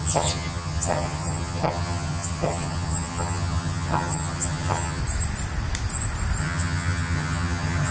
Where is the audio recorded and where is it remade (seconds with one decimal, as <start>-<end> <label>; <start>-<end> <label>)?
0.0-5.0 remade; 5.0-6.4 recorded; 6.4-7.9 remade